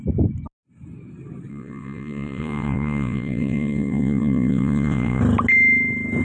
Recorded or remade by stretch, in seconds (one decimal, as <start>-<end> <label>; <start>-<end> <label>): 0.0-1.5 recorded; 1.5-5.2 remade; 5.2-6.2 recorded